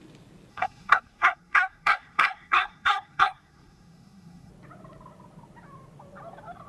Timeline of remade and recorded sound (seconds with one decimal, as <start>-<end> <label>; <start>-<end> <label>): 0.0-0.5 recorded; 0.5-4.5 remade; 4.5-6.7 recorded